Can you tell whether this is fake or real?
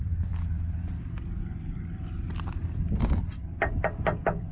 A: fake